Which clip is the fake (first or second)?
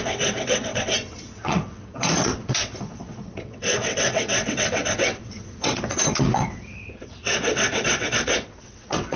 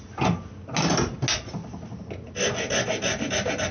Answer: first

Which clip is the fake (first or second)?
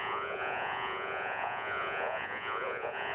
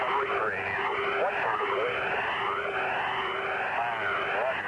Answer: first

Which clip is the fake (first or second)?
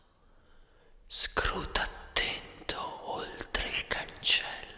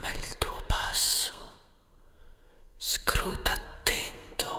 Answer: second